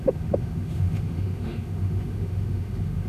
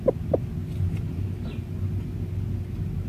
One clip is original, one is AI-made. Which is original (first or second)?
second